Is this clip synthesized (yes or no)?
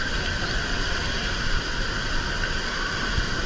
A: no